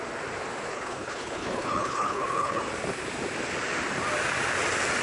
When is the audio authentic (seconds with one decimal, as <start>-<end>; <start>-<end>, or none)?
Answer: 0.0-0.7; 2.6-5.0